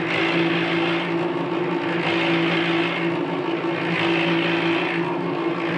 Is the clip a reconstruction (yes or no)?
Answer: no